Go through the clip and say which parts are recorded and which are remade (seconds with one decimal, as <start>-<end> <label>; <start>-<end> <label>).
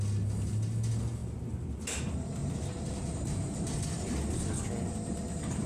0.0-2.4 recorded; 2.4-4.1 remade; 4.1-5.7 recorded